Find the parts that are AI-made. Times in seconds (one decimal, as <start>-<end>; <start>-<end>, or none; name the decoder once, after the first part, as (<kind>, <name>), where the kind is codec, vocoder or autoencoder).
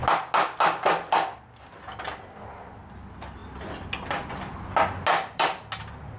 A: none